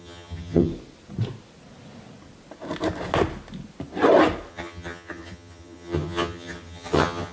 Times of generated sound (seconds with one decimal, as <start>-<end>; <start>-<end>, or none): 0.0-0.7; 4.5-7.3